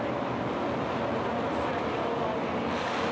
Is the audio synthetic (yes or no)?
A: no